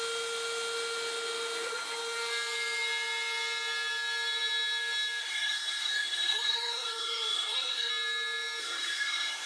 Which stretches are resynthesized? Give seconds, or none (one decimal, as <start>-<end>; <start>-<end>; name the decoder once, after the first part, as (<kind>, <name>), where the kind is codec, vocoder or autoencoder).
5.2-7.9 (codec, SNAC); 8.6-9.5